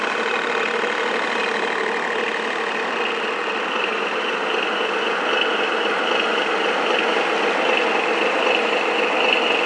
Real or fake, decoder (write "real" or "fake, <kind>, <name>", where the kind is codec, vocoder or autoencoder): real